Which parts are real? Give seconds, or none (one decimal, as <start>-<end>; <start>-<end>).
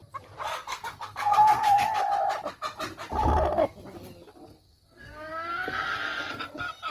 0.0-0.7; 2.0-4.5; 6.4-6.9